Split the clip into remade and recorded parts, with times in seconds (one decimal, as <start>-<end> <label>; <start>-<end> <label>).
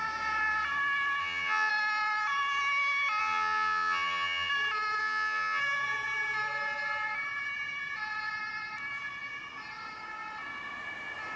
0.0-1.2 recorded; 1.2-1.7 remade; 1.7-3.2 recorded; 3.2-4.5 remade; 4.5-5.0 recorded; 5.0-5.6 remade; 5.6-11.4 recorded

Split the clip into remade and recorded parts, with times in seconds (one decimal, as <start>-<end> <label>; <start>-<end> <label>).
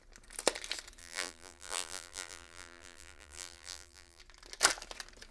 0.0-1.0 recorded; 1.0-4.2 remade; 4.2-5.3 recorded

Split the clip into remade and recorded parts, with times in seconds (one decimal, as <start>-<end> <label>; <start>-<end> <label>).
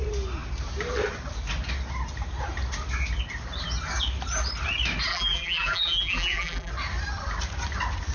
0.0-5.1 recorded; 5.1-6.7 remade; 6.7-8.1 recorded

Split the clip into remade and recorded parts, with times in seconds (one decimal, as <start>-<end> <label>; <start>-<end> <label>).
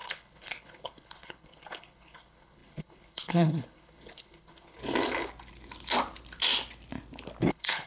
0.0-4.8 remade; 4.8-7.4 recorded; 7.4-7.9 remade